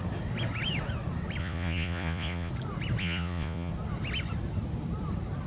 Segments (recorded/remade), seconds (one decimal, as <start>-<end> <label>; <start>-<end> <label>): 0.0-1.4 recorded; 1.4-2.5 remade; 2.5-3.0 recorded; 3.0-3.7 remade; 3.7-5.5 recorded